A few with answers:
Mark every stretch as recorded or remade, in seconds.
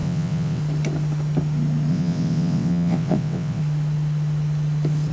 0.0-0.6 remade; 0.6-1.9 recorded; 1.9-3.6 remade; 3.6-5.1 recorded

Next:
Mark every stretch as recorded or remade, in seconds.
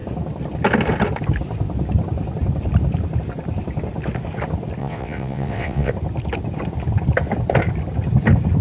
0.0-4.8 recorded; 4.8-5.9 remade; 5.9-8.6 recorded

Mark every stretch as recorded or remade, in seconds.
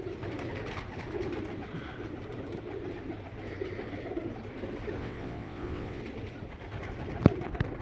0.0-5.0 recorded; 5.0-6.0 remade; 6.0-7.8 recorded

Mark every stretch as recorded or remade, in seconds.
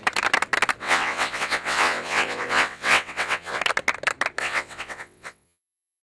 0.0-0.8 recorded; 0.8-3.6 remade; 3.6-4.4 recorded; 4.4-6.0 remade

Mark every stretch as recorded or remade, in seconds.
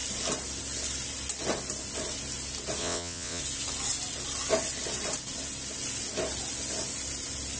0.0-2.8 recorded; 2.8-3.4 remade; 3.4-7.6 recorded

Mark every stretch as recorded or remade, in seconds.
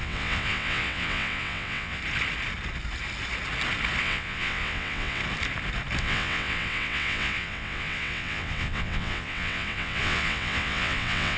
0.0-2.0 remade; 2.0-4.0 recorded; 4.0-5.2 remade; 5.2-6.0 recorded; 6.0-11.4 remade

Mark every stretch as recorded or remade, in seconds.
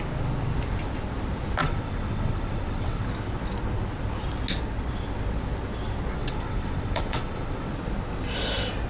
0.0-1.6 recorded; 1.6-3.1 remade; 3.1-6.2 recorded; 6.2-7.7 remade; 7.7-8.9 recorded